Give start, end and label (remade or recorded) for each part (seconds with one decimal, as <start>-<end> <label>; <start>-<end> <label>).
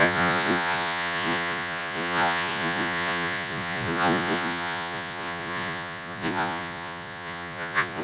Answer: 0.0-8.0 remade